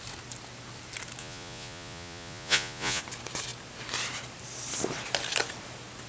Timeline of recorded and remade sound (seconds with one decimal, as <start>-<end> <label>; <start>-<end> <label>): 0.0-1.2 recorded; 1.2-3.0 remade; 3.0-6.1 recorded